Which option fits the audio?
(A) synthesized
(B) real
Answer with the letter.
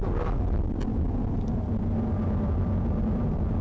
B